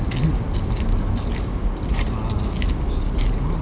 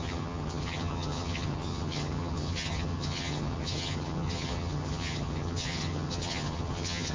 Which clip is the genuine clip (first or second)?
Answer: first